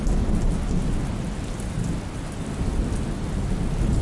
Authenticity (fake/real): real